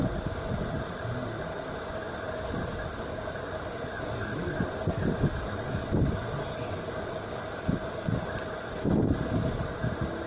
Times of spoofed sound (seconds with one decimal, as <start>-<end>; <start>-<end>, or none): none

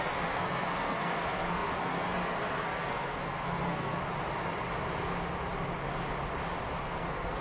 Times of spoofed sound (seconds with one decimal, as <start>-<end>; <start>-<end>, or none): 0.0-4.0; 6.8-7.4